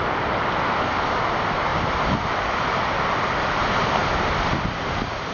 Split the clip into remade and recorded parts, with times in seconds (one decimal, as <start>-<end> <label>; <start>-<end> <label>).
0.0-5.3 recorded